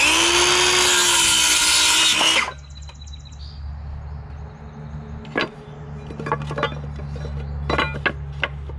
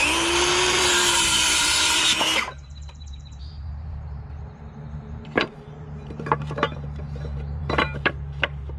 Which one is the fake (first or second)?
second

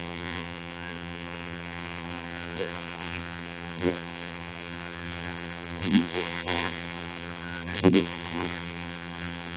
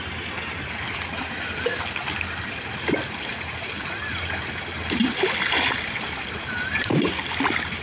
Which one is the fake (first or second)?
first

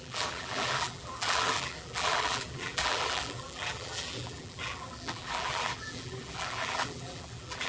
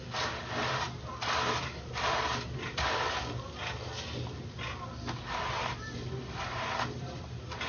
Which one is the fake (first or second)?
first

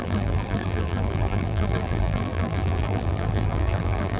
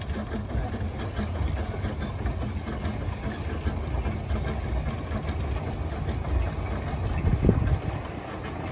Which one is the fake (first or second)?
first